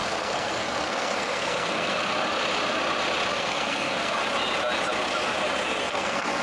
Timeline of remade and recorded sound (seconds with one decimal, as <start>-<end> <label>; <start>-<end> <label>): 0.0-2.0 remade; 2.0-3.3 recorded; 3.3-4.2 remade; 4.2-5.8 recorded; 5.8-6.4 remade